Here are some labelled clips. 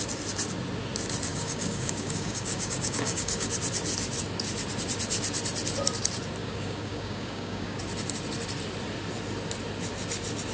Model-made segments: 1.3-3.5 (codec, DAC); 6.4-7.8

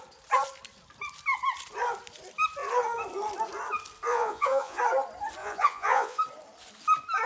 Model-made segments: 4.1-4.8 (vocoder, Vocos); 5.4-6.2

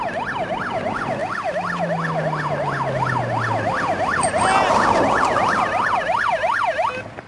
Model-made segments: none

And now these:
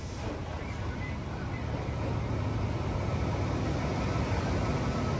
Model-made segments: 0.0-2.1 (vocoder, BigVGAN v2); 3.5-5.2

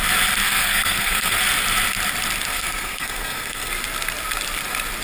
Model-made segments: 0.4-1.4 (codec, SNAC); 2.5-3.7

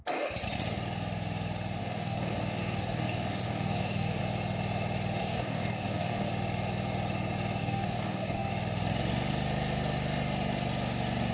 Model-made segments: 1.8-4.2 (codec, DAC); 5.2-6.3; 7.6-8.5

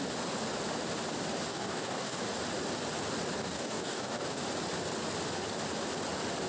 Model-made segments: 1.5-2.2 (codec, DAC); 3.4-4.4